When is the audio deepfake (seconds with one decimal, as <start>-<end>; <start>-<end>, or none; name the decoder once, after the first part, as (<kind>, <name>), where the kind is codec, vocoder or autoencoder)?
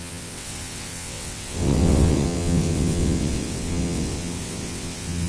0.0-5.3 (vocoder, WaveNeXt)